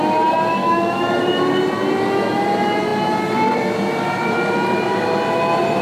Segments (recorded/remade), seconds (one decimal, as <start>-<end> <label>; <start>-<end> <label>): 0.0-0.6 recorded; 0.6-1.2 remade; 1.2-5.8 recorded